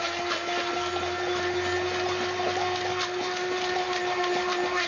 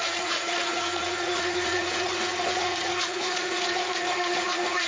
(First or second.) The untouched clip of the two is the first